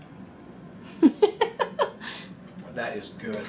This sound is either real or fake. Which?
fake